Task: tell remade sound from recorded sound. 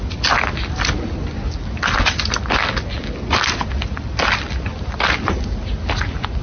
recorded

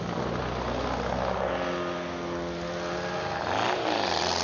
recorded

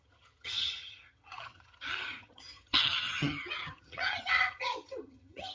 remade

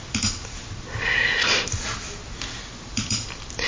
recorded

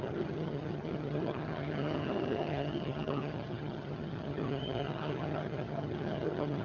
remade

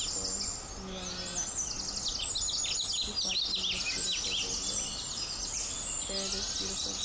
recorded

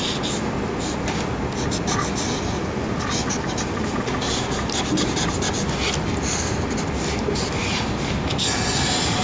recorded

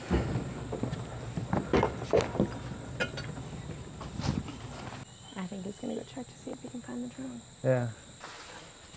recorded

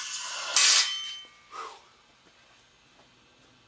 recorded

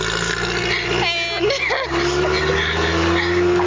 recorded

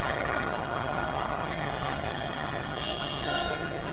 remade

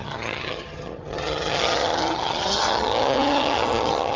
remade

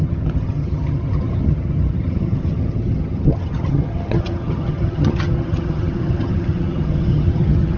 remade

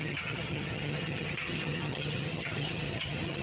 remade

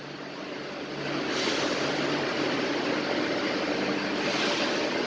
recorded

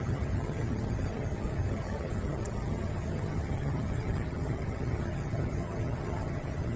remade